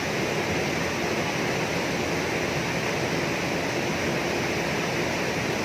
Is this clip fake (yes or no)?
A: no